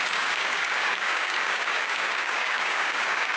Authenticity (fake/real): fake